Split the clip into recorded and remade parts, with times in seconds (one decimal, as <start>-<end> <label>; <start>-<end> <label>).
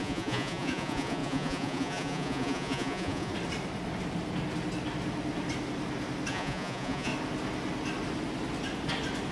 0.0-3.3 remade; 3.3-6.3 recorded; 6.3-7.1 remade; 7.1-9.3 recorded